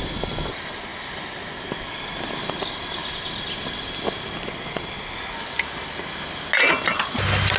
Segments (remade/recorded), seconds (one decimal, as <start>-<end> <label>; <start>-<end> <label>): 0.0-7.6 recorded